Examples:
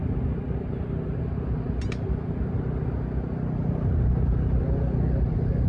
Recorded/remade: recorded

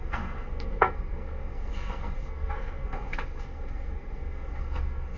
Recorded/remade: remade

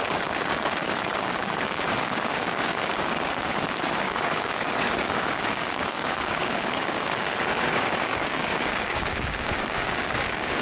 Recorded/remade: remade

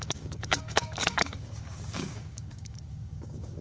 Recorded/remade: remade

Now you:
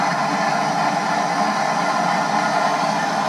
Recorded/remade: recorded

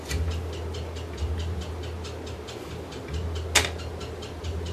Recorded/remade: recorded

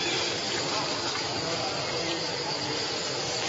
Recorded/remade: recorded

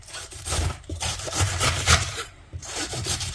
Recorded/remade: remade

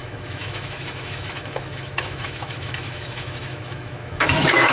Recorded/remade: remade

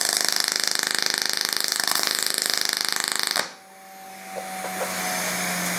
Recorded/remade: recorded